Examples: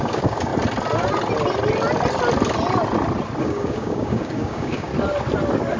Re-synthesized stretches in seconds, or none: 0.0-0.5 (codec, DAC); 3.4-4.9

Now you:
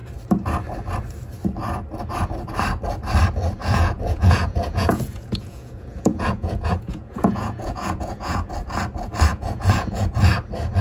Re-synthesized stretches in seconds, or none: 3.6-8.5 (vocoder, Vocos); 9.3-10.2

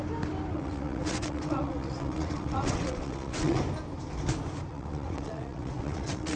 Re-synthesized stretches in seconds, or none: 0.5-3.6 (vocoder, WaveNeXt); 4.7-6.4

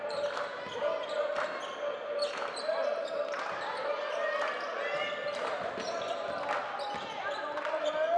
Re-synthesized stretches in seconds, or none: none

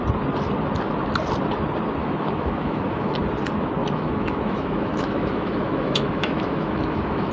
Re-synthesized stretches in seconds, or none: 2.0-3.1 (autoencoder, DAC-VAE); 3.8-7.3

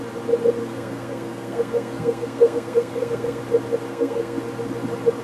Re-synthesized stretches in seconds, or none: 0.6-3.4 (codec, SNAC); 3.9-4.4